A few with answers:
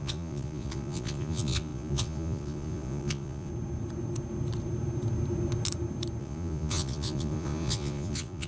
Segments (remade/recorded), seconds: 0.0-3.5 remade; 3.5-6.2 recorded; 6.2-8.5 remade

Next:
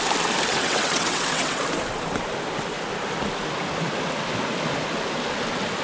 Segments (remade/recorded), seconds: 0.0-0.5 recorded; 0.5-1.6 remade; 1.6-5.8 recorded

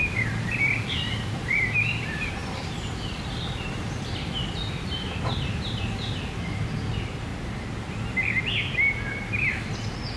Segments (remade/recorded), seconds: 0.0-7.3 remade; 7.3-8.4 recorded; 8.4-10.2 remade

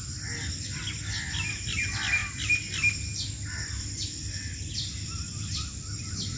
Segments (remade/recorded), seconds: 0.0-6.4 recorded